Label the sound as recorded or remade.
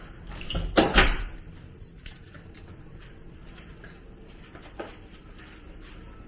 recorded